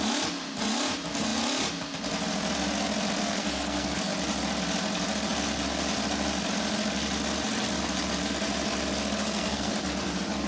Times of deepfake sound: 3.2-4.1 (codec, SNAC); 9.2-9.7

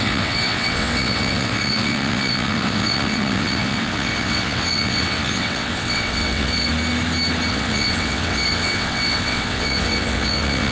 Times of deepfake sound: 0.0-6.7 (vocoder, WaveNeXt); 7.5-10.7

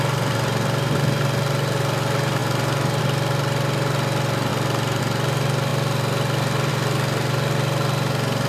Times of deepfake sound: none

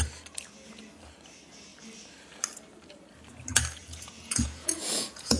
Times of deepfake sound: 3.8-5.4 (vocoder, Vocos)

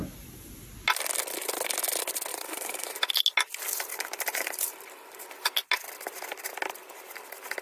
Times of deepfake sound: 2.3-3.1 (vocoder, BigVGAN v2); 3.9-5.3

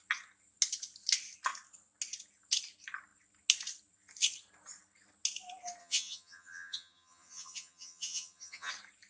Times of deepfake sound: 5.8-8.7 (vocoder, HiFi-GAN)

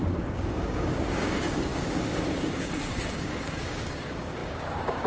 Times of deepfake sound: 0.0-5.1 (codec, DAC)